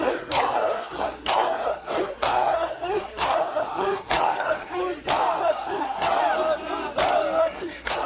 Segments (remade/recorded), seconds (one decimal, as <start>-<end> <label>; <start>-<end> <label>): 0.0-4.8 remade; 4.8-5.4 recorded; 5.4-6.2 remade; 6.2-7.4 recorded; 7.4-8.1 remade